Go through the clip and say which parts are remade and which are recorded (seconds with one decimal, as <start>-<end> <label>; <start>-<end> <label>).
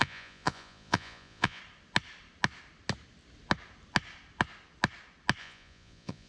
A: 0.0-1.6 remade; 1.6-5.4 recorded; 5.4-6.3 remade